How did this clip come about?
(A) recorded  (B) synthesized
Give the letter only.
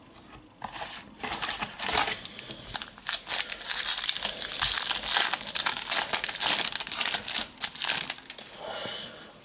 A